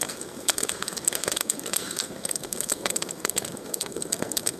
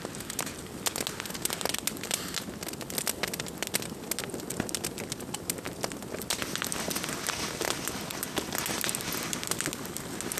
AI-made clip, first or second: first